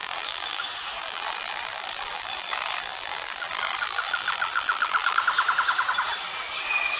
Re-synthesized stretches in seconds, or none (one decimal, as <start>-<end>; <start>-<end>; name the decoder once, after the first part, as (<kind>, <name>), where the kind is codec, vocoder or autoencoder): 0.0-0.6 (vocoder, BigVGAN v2); 1.0-5.2